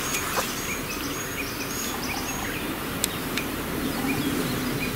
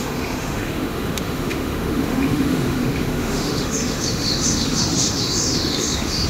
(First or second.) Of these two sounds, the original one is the first